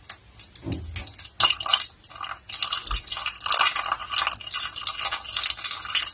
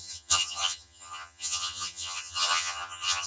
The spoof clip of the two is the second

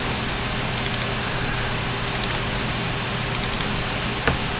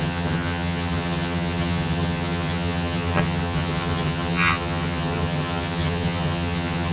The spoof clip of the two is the second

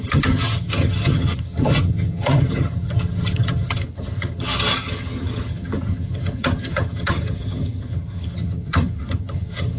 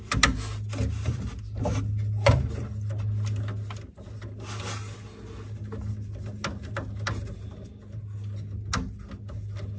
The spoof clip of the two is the first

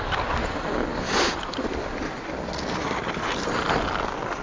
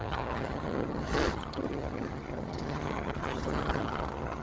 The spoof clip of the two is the second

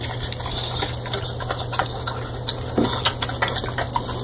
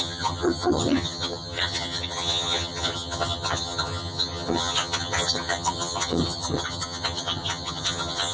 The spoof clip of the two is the second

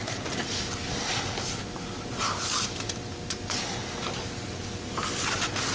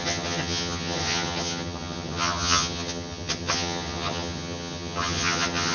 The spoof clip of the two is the second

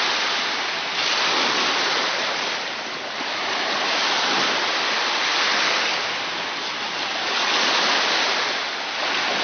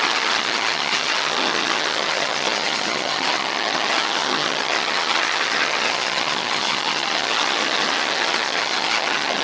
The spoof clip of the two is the second